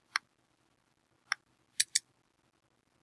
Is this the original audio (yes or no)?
yes